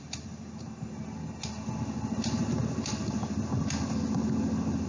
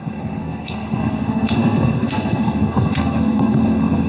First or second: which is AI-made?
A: second